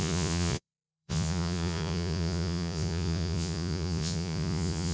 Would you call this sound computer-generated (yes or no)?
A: yes